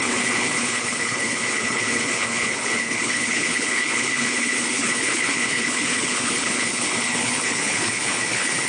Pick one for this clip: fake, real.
fake